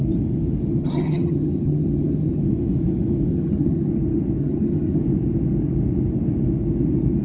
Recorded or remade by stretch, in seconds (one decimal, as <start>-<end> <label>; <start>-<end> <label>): 0.0-0.8 recorded; 0.8-2.4 remade; 2.4-3.3 recorded; 3.3-3.9 remade; 3.9-4.4 recorded; 4.4-5.0 remade; 5.0-7.2 recorded